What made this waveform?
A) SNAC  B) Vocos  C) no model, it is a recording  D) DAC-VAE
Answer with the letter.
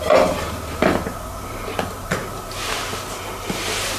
C